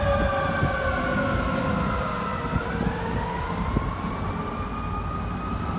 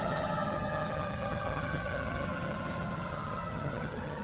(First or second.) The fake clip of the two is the second